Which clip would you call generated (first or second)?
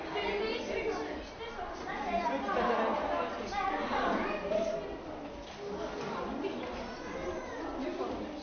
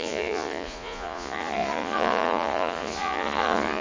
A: second